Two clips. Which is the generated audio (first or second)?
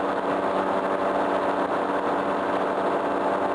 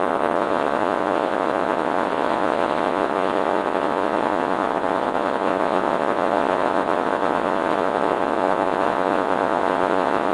second